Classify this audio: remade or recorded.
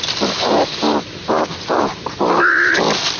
recorded